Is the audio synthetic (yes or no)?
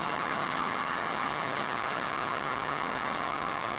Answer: yes